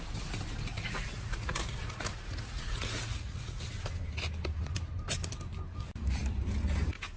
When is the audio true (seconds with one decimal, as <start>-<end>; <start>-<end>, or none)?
0.0-0.7; 3.6-7.2